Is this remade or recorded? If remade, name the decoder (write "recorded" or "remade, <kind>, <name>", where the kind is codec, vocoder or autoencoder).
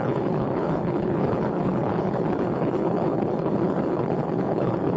remade, codec, HILCodec